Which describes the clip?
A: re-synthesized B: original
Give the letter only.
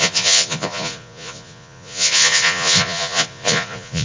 A